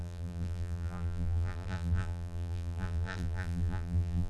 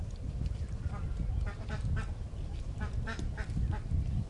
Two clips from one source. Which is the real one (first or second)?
second